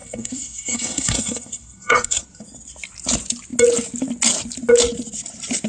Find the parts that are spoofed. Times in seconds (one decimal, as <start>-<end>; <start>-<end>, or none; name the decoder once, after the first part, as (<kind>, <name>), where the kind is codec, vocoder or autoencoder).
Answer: 0.0-2.2 (codec, SNAC)